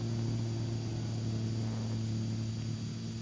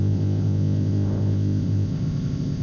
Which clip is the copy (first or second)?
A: second